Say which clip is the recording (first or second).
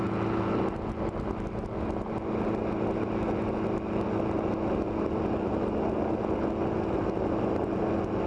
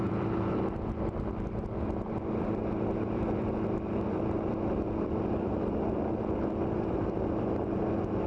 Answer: first